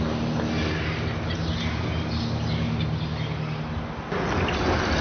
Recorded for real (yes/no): yes